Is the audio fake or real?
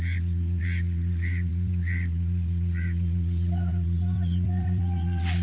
fake